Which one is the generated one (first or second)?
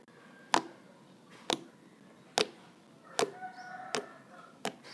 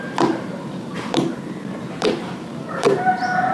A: second